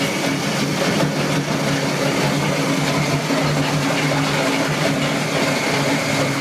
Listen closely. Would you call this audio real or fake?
real